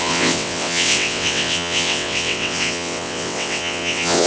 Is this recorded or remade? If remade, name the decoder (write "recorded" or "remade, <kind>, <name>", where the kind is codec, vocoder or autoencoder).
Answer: remade, vocoder, WaveNeXt